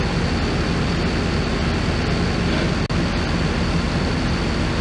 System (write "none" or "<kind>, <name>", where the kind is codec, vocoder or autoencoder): none